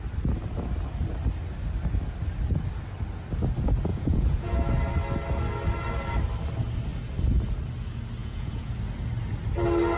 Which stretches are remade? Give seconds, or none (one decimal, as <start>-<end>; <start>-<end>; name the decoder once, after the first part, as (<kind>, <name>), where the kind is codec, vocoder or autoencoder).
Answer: 3.9-4.7 (vocoder, Vocos); 8.2-8.7